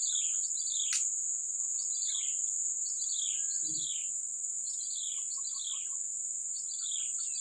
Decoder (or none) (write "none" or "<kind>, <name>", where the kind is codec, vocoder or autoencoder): none